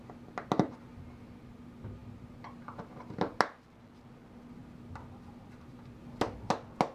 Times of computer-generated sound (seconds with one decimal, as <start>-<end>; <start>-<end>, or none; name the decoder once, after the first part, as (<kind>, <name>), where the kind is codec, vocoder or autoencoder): none